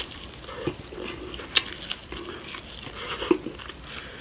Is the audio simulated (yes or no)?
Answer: no